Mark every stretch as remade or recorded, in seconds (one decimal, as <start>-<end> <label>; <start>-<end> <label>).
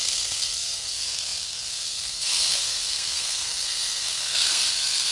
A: 0.0-5.1 remade